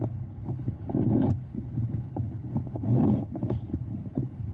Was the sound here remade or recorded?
remade